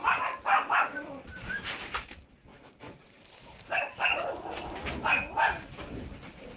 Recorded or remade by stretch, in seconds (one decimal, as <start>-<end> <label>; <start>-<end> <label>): 0.0-2.1 remade; 2.1-2.5 recorded; 2.5-4.4 remade; 4.4-6.6 recorded